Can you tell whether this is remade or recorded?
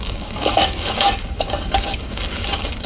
remade